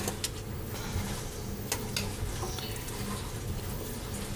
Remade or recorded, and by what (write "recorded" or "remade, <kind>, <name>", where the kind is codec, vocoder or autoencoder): recorded